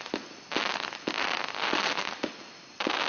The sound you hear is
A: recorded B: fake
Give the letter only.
A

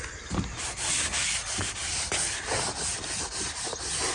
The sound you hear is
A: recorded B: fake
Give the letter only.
A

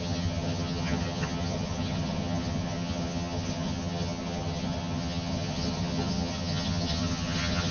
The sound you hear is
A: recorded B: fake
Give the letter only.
B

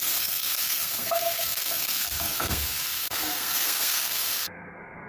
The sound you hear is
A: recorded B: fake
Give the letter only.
B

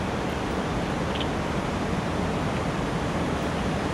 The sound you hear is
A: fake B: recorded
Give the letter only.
B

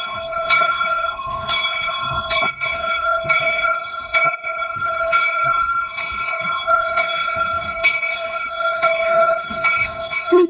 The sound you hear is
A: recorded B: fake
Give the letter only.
B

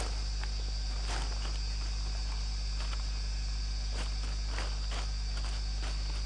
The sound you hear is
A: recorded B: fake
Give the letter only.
A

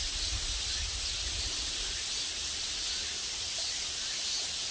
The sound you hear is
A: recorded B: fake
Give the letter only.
A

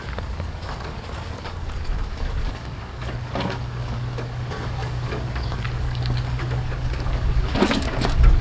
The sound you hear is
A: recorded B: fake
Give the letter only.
B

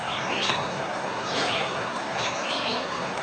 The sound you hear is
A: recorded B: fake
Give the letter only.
B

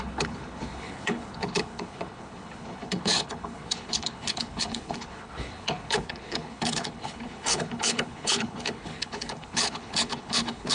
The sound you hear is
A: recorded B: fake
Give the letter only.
B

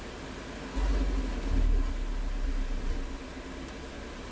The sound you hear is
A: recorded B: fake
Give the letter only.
A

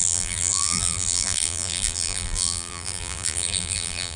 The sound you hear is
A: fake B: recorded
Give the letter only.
A